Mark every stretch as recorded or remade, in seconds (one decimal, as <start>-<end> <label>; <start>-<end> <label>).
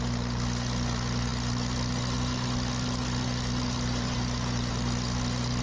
0.0-5.6 recorded